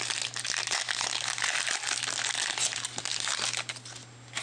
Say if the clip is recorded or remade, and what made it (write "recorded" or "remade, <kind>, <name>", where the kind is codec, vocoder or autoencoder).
recorded